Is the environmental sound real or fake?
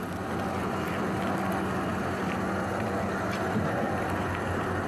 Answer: real